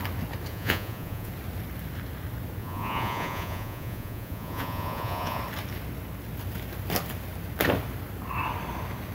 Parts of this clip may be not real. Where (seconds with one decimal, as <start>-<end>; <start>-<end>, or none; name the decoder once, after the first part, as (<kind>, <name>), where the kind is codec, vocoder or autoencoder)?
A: 0.5-1.3 (vocoder, Vocos); 2.6-5.4